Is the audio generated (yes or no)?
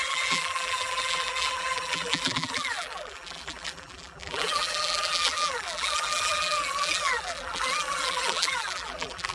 yes